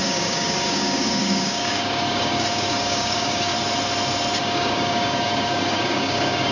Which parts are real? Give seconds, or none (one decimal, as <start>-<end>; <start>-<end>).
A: 3.5-4.4